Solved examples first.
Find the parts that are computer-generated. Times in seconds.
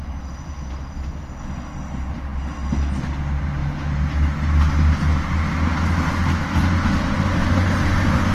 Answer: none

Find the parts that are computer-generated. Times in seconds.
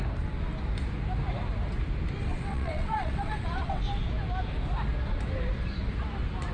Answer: 2.2-3.8 (vocoder, WaveNeXt)